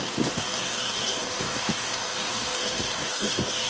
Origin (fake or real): fake